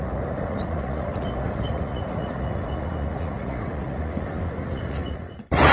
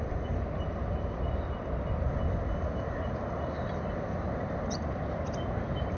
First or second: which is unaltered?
second